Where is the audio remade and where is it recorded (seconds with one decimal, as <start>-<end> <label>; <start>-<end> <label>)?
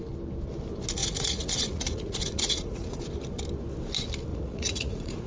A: 0.0-1.0 recorded; 1.0-3.0 remade; 3.0-4.3 recorded; 4.3-5.3 remade